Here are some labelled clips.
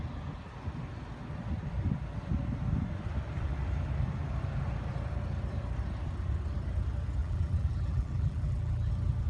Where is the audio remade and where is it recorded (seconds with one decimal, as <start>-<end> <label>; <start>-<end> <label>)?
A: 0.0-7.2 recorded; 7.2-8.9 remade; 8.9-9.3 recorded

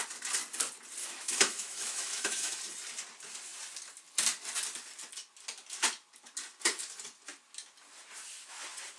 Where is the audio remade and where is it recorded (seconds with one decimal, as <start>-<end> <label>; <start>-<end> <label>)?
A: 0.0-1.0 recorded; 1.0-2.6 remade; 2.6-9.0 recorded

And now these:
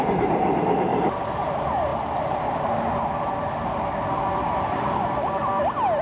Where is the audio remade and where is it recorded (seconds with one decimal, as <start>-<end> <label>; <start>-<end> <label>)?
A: 0.0-6.0 recorded